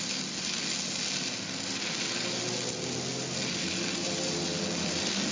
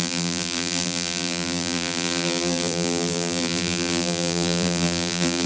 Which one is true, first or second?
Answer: first